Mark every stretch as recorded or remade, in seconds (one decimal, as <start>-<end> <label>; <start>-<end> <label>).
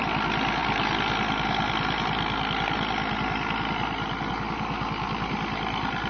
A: 0.0-6.1 recorded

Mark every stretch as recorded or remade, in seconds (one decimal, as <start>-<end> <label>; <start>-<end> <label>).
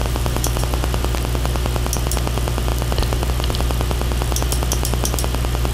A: 0.0-0.6 remade; 0.6-5.7 recorded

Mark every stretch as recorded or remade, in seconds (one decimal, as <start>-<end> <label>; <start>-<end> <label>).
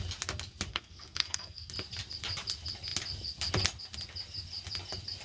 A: 0.0-0.7 recorded; 0.7-1.7 remade; 1.7-5.2 recorded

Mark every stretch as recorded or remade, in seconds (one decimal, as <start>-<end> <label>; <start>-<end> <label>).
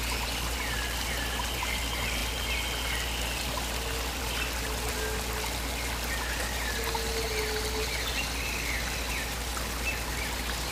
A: 0.0-7.1 remade; 7.1-8.1 recorded; 8.1-9.5 remade; 9.5-10.1 recorded; 10.1-10.7 remade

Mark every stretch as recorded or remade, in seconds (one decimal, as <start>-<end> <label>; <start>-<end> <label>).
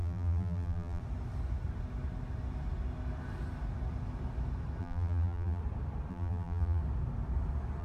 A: 0.0-1.0 remade; 1.0-4.8 recorded; 4.8-5.6 remade; 5.6-6.1 recorded; 6.1-6.8 remade; 6.8-7.8 recorded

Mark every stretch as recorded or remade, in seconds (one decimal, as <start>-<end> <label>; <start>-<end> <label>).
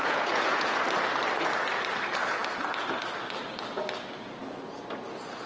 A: 0.0-0.8 remade; 0.8-5.5 recorded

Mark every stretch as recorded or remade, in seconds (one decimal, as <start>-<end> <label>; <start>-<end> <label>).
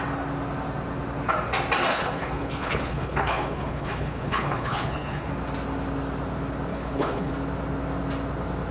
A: 0.0-1.9 recorded; 1.9-5.3 remade; 5.3-6.7 recorded; 6.7-7.3 remade; 7.3-8.7 recorded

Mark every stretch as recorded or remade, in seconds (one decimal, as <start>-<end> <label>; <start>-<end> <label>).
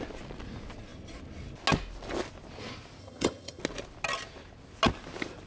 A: 0.0-3.0 recorded; 3.0-3.6 remade; 3.6-5.5 recorded